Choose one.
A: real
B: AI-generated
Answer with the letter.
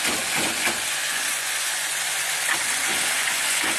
B